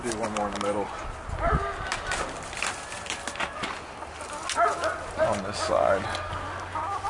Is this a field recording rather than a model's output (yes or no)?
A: yes